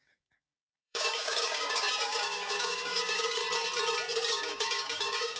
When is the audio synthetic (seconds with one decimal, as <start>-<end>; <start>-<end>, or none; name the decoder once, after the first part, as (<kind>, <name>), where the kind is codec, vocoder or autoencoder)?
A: 0.0-3.4 (codec, DAC); 4.3-5.4